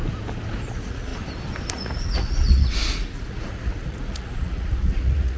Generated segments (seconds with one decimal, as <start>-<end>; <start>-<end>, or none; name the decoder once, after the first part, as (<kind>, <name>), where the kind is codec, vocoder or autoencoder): 0.6-1.1 (vocoder, Vocos); 1.7-5.4